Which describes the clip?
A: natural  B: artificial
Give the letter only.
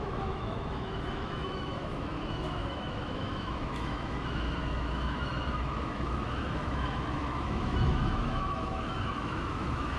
B